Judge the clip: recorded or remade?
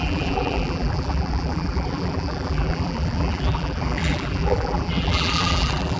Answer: remade